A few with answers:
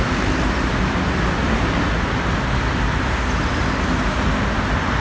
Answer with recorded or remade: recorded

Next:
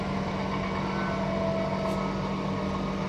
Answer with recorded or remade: recorded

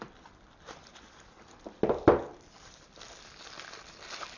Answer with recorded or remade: recorded